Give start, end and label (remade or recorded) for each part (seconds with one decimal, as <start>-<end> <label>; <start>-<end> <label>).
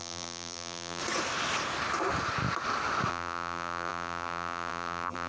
0.0-1.0 remade; 1.0-3.1 recorded; 3.1-5.3 remade